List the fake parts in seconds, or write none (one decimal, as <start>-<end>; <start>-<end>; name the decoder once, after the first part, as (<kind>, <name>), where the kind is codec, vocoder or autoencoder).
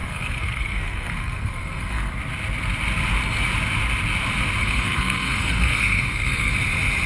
0.0-2.1 (codec, SNAC); 4.6-6.5